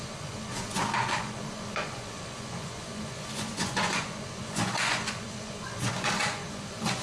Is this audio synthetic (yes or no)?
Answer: yes